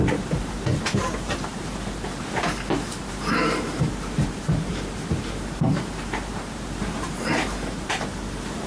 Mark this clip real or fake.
fake